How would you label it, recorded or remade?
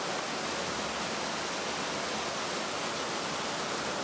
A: recorded